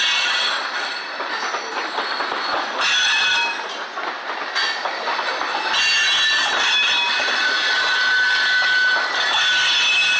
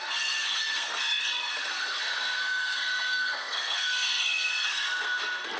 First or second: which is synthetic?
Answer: second